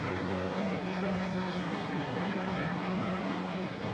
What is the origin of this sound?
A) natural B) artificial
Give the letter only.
B